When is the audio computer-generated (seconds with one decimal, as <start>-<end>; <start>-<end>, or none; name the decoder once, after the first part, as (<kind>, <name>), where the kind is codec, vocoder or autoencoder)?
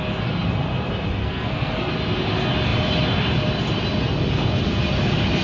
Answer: 1.2-1.9 (codec, SNAC)